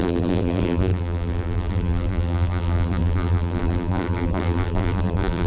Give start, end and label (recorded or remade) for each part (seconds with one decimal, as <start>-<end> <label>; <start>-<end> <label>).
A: 0.0-5.5 remade